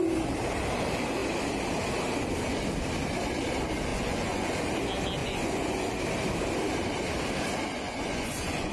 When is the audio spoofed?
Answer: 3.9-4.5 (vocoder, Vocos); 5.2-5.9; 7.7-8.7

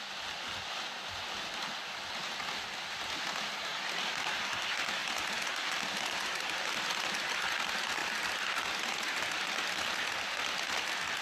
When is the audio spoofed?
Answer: none

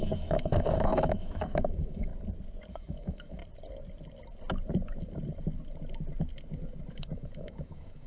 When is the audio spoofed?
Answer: 0.0-2.1 (autoencoder, DAC-VAE); 2.7-3.4; 6.9-8.1

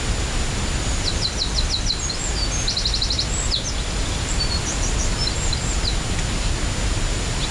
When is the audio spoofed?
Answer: none

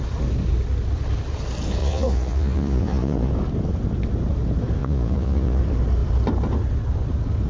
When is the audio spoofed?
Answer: 1.8-3.3 (vocoder, Vocos); 4.8-5.6

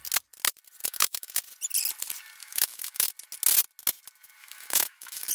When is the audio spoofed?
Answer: 0.8-1.4 (autoencoder, DAC-VAE); 2.4-3.1; 4.4-5.3